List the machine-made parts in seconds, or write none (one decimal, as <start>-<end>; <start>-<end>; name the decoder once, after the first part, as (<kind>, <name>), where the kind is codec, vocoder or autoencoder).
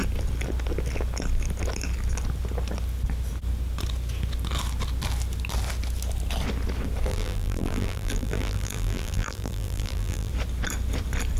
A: 7.1-10.3 (vocoder, BigVGAN v2)